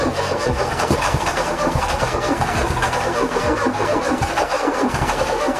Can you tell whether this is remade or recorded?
remade